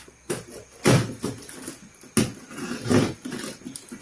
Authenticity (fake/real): real